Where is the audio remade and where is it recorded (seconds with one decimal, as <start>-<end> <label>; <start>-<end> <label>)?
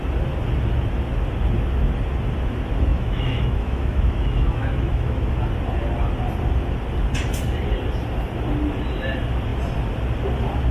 0.0-2.9 recorded; 2.9-5.3 remade; 5.3-10.7 recorded